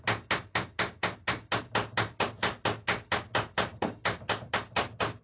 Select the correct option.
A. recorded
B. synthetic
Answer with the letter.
A